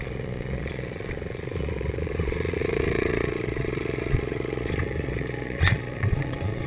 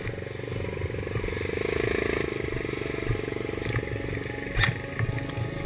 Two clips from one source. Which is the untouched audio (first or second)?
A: second